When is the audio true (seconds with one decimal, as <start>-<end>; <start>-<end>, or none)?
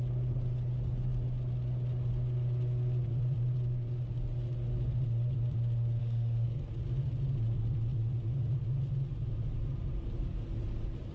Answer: 0.0-6.0; 6.7-11.1